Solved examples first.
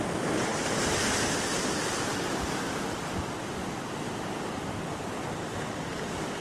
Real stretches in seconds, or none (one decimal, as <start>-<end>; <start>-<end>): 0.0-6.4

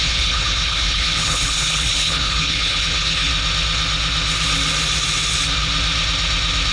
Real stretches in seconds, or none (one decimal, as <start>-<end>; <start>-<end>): 3.3-6.7

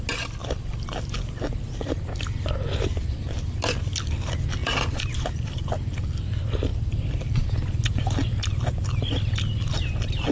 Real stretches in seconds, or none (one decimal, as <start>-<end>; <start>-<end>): 0.0-4.6; 5.7-10.3